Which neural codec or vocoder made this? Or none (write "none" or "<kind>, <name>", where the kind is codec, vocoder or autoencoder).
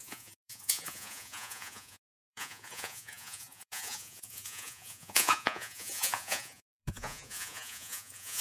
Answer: vocoder, Vocos